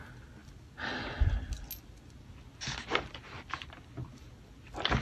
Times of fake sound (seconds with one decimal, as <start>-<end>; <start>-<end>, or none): none